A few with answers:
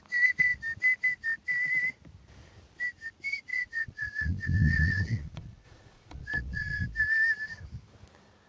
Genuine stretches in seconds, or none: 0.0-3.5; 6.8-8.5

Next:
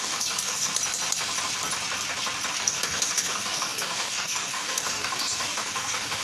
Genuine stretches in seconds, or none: 0.7-2.5

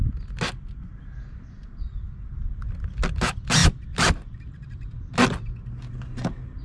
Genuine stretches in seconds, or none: 0.0-3.6; 5.1-6.6

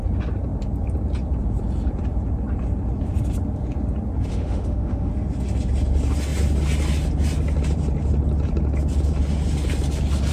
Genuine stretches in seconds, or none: 0.0-4.3; 5.1-10.3

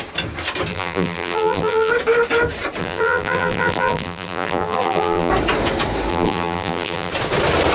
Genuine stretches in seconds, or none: 0.0-0.7; 1.9-2.8; 5.3-6.1; 7.1-7.7

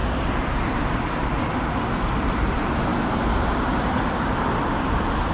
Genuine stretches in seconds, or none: none